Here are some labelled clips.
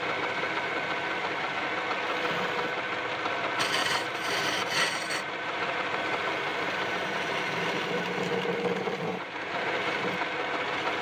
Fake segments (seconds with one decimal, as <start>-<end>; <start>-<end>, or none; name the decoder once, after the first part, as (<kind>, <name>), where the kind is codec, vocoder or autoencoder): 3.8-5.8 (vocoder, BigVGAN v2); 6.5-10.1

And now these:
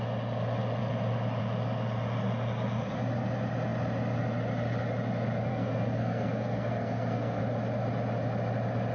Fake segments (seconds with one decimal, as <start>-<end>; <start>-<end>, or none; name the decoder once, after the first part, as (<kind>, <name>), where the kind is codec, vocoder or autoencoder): 5.5-7.4 (codec, SNAC)

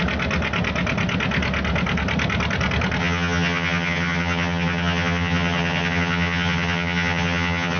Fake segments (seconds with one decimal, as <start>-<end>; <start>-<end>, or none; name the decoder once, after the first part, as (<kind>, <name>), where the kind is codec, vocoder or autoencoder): 3.0-7.8 (vocoder, HiFi-GAN)

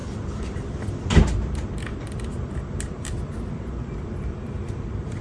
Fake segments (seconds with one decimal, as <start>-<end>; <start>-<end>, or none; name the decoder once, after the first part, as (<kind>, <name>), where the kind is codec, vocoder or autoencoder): 0.0-1.3 (vocoder, BigVGAN v2); 1.9-5.2

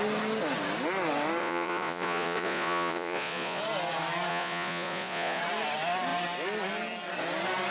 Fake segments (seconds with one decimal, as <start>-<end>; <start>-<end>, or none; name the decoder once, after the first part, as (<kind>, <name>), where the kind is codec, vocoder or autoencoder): 1.4-3.6 (vocoder, Vocos); 4.3-5.4

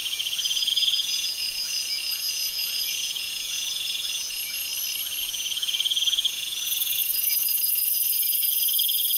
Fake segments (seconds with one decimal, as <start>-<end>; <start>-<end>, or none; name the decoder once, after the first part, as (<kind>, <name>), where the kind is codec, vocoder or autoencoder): 0.0-4.7 (vocoder, Vocos); 5.2-9.2

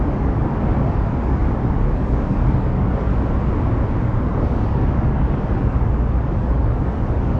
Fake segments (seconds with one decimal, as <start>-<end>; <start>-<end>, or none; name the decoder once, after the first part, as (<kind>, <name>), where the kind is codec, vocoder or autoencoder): 0.0-3.1 (codec, DAC); 4.0-7.4

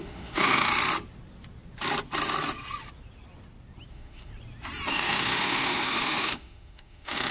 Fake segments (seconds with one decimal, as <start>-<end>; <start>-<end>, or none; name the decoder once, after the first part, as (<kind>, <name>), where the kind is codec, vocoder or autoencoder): 0.0-0.7 (autoencoder, DAC-VAE); 3.9-4.3; 4.9-7.3